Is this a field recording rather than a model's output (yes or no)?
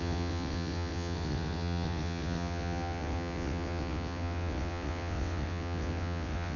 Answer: no